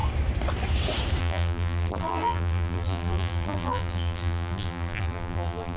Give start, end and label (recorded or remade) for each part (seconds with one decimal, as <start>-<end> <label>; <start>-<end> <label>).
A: 0.0-1.2 recorded; 1.2-5.8 remade